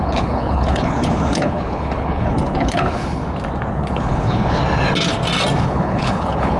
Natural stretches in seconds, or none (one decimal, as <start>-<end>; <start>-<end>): 3.2-3.7; 4.6-5.6